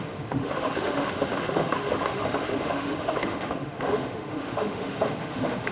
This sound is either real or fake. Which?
fake